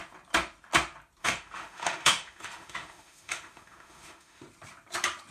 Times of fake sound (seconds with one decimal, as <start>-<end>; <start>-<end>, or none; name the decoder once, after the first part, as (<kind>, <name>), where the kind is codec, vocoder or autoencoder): 1.2-4.4 (autoencoder, DAC-VAE)